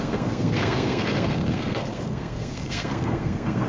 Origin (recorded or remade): remade